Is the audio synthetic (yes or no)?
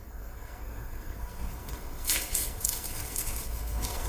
yes